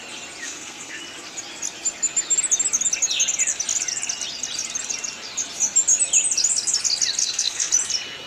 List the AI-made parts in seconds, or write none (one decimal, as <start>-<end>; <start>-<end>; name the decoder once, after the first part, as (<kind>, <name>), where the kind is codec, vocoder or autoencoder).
0.4-1.0 (codec, SNAC); 7.2-7.7

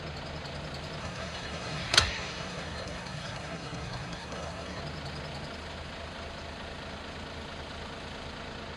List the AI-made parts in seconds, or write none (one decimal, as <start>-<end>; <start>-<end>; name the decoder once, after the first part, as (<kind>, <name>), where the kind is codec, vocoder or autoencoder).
1.0-4.8 (codec, SNAC)

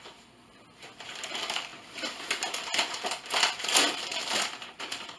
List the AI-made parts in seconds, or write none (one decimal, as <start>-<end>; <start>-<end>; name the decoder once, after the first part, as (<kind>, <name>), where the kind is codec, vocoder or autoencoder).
none

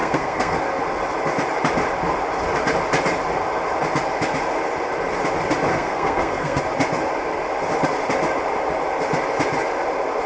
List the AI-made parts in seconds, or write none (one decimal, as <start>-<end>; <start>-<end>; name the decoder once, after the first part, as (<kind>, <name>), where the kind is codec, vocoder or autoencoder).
0.0-0.6 (codec, SNAC); 5.7-6.6

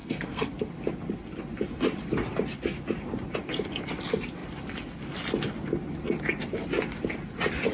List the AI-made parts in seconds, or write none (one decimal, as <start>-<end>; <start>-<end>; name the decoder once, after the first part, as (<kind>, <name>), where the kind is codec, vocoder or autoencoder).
0.0-0.5 (codec, SNAC)

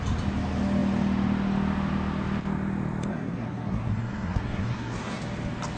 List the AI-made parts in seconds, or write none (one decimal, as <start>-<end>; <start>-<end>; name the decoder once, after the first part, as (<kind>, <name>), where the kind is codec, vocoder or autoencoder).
3.1-5.2 (codec, SNAC)

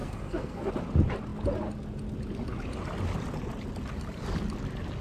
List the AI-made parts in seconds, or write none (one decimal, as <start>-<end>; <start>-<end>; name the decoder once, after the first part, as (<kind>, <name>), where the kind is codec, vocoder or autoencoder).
0.0-0.7 (codec, SNAC)